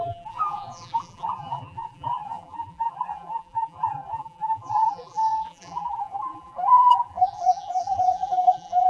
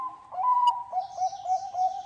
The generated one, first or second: first